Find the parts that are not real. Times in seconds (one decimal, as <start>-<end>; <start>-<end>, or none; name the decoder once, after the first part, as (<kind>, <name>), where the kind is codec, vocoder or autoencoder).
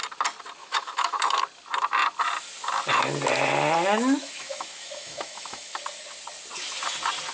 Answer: 0.6-1.4 (autoencoder, DAC-VAE); 4.2-5.8